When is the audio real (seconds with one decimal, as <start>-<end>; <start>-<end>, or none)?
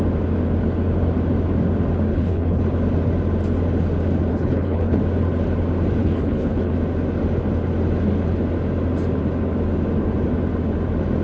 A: 0.0-2.1; 2.6-4.3; 5.0-6.0; 6.7-11.2